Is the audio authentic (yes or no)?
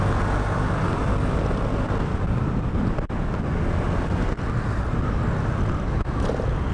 yes